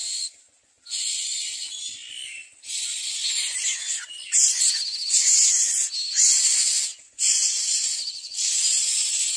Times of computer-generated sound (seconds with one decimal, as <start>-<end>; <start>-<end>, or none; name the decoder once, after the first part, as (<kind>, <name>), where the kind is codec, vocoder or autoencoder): 6.9-8.6 (vocoder, Vocos)